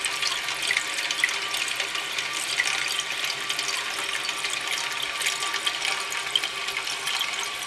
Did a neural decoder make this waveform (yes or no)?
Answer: no